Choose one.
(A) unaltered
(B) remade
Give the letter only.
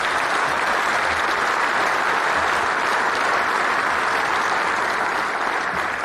A